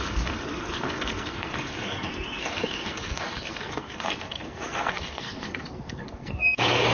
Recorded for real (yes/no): no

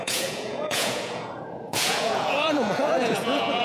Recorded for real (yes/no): no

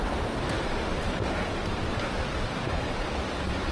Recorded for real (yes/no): yes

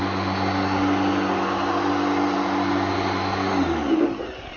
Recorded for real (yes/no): yes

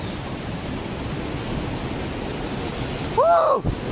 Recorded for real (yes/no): yes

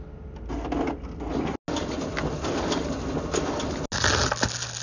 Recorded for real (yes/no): yes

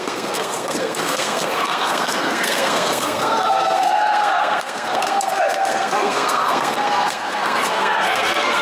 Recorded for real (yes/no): no